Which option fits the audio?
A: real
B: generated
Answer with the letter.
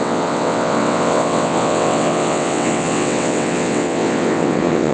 B